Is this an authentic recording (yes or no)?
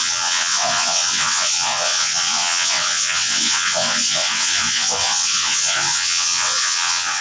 no